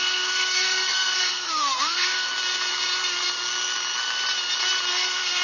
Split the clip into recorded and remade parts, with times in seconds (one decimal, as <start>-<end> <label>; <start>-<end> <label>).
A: 0.0-2.3 remade; 2.3-4.9 recorded; 4.9-5.4 remade